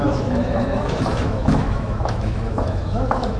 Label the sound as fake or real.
fake